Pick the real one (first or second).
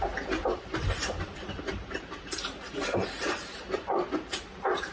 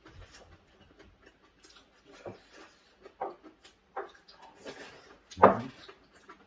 second